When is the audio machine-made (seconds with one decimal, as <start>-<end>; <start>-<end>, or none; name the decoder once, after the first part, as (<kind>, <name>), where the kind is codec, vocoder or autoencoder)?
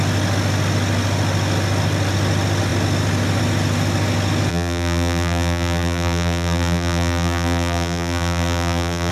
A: 4.5-9.1 (vocoder, BigVGAN v2)